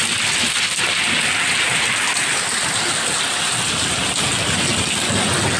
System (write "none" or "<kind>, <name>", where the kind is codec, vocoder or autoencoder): none